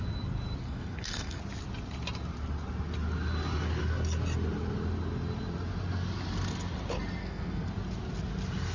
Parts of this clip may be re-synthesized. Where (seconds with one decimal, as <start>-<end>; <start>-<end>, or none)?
0.6-1.4; 7.2-7.7